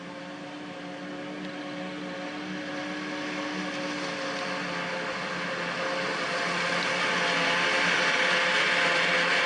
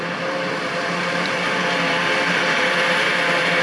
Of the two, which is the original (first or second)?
first